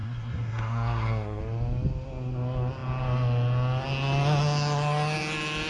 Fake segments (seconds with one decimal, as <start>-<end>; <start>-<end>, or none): 0.0-1.4